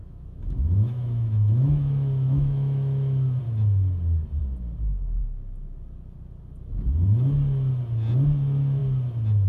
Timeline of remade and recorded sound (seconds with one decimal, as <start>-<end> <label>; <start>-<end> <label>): 0.0-3.4 remade; 3.4-9.5 recorded